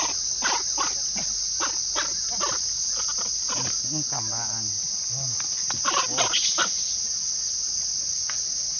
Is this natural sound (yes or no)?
yes